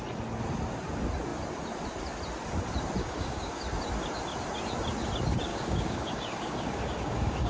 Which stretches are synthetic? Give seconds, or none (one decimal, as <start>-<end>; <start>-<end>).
3.0-3.6; 5.5-7.5